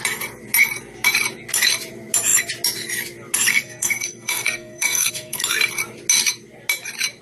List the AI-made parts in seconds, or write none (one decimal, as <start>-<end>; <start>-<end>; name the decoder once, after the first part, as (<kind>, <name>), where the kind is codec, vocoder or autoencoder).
3.5-5.4 (codec, SNAC)